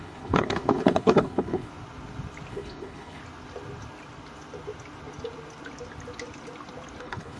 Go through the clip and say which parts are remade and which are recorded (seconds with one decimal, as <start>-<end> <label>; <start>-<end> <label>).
0.0-1.7 remade; 1.7-2.5 recorded; 2.5-3.2 remade; 3.2-7.0 recorded; 7.0-7.4 remade